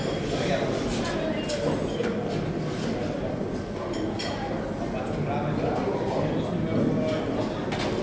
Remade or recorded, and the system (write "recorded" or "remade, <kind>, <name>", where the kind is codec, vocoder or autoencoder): recorded